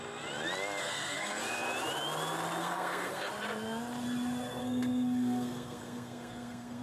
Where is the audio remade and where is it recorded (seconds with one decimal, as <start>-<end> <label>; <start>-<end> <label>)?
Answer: 0.0-0.8 recorded; 0.8-1.4 remade; 1.4-2.6 recorded; 2.6-3.3 remade; 3.3-4.6 recorded; 4.6-6.8 remade